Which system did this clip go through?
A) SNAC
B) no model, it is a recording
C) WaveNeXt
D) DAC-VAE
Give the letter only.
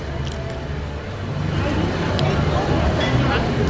B